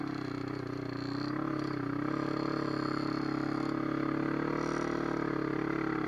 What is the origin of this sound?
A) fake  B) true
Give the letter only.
B